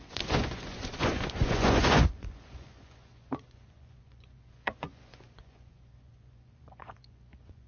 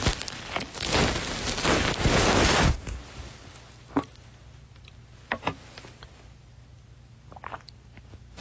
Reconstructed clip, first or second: first